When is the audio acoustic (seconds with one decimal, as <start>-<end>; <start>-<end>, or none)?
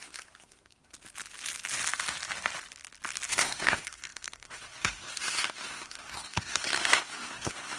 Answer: 0.9-3.3